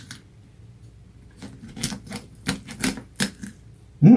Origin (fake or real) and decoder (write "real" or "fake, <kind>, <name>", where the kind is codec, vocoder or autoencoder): real